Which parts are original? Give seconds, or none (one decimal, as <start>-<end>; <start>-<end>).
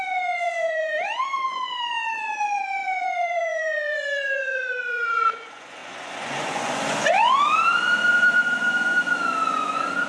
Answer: none